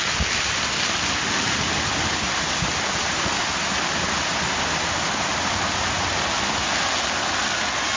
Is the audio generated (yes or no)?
no